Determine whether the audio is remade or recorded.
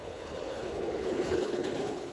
remade